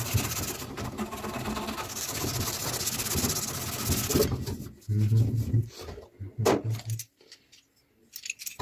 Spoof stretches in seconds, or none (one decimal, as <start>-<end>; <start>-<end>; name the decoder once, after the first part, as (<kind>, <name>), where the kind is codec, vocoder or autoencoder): none